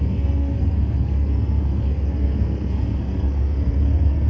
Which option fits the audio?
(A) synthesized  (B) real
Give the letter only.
A